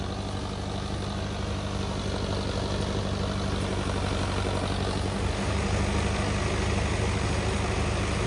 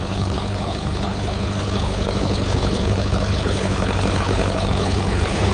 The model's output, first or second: second